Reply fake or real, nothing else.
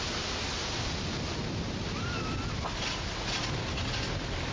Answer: real